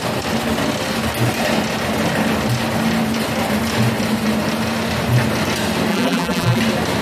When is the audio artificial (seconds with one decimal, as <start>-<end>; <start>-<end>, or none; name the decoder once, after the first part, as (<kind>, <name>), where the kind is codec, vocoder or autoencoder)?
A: 5.9-6.6 (vocoder, BigVGAN v2)